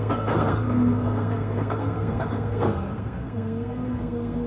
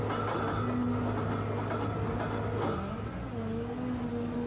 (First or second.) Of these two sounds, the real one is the second